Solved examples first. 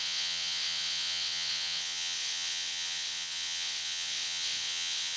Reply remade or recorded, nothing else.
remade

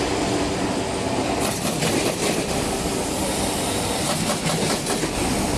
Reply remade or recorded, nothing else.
recorded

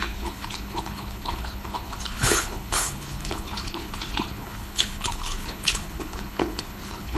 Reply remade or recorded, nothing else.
remade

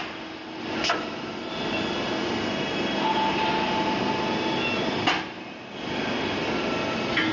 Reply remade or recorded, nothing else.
recorded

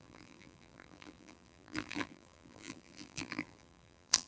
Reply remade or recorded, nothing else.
remade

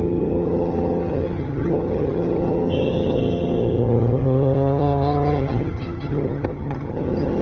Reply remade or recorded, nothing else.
remade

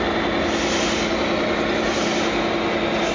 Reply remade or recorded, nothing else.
recorded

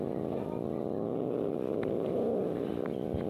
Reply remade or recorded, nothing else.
remade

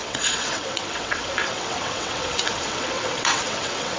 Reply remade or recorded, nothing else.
remade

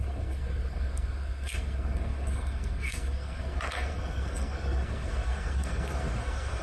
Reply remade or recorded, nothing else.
remade